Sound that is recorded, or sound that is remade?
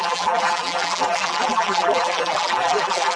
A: remade